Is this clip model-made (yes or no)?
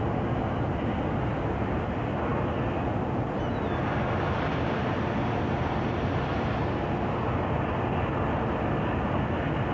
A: no